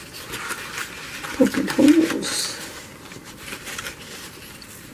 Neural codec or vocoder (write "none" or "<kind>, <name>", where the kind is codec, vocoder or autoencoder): vocoder, BigVGAN v2